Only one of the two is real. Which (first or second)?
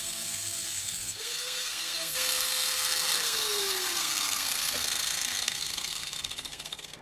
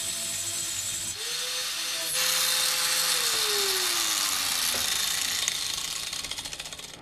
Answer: second